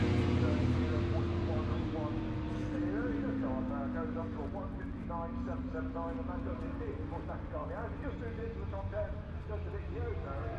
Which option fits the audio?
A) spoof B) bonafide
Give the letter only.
B